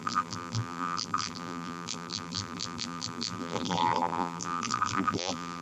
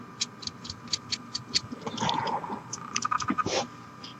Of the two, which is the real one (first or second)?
second